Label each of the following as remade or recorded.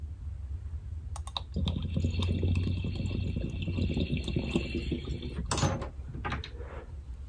recorded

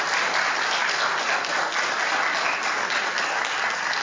recorded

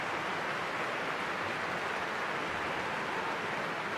recorded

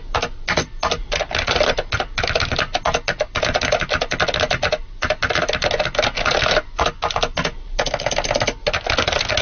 recorded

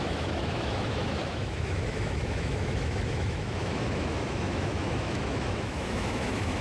remade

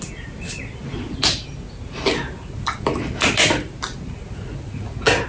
recorded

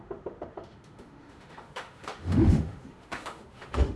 remade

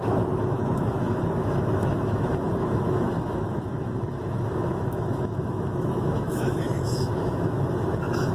remade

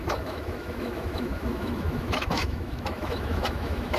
remade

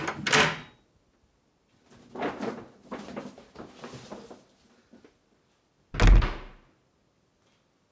recorded